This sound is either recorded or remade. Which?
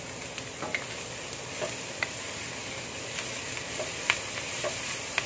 recorded